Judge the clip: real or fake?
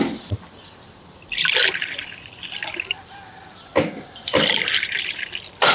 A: fake